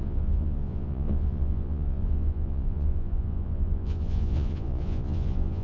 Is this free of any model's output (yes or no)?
no